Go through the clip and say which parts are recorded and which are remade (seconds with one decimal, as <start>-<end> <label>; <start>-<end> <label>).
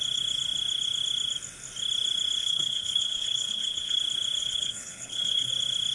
0.0-2.4 recorded; 2.4-4.0 remade; 4.0-4.4 recorded; 4.4-5.5 remade; 5.5-5.9 recorded